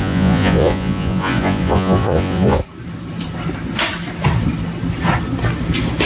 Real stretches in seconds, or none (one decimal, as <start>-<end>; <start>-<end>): 2.6-6.1